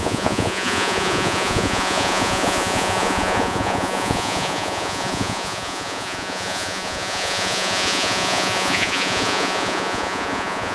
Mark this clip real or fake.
fake